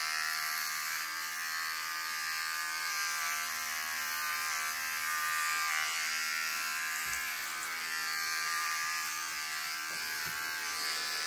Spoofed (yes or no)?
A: yes